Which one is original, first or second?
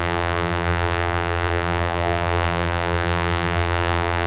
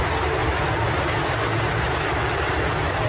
second